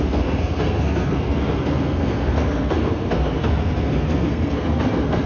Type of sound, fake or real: fake